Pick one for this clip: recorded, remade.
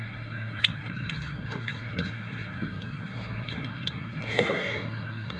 remade